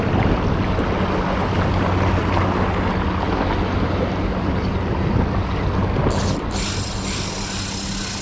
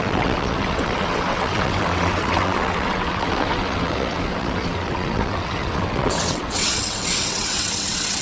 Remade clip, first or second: second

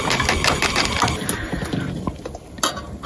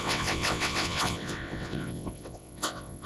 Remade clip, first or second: second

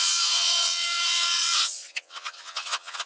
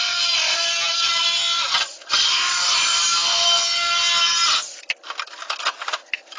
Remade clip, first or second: first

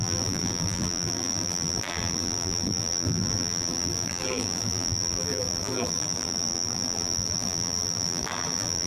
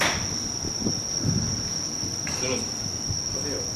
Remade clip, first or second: first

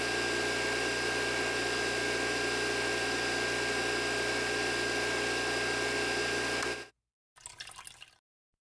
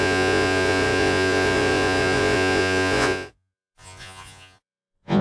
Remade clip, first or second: second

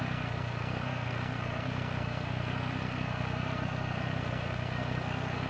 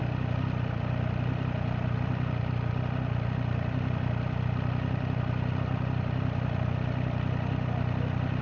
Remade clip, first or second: first